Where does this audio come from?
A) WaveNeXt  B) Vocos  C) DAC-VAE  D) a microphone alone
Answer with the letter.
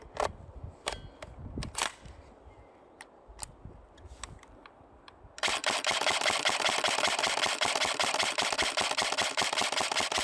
D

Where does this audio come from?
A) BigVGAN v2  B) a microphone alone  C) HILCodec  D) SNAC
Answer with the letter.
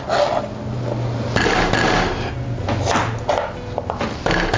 B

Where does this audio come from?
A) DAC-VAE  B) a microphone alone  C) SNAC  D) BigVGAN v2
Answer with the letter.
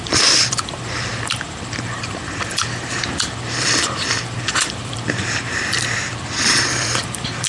D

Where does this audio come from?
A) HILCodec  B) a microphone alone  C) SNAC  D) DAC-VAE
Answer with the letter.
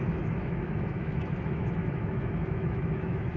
D